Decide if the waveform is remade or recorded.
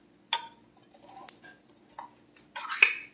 recorded